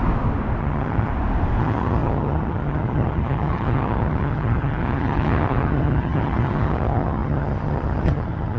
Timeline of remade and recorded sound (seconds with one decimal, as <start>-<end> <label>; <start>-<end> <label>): 0.0-0.6 recorded; 0.6-1.1 remade; 1.1-1.6 recorded; 1.6-8.6 remade